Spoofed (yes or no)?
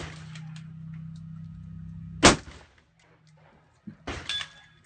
no